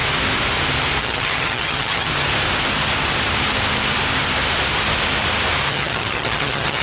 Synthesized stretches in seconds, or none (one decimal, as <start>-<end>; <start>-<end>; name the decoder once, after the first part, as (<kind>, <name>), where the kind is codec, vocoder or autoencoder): 1.0-2.1 (vocoder, HiFi-GAN); 5.7-6.8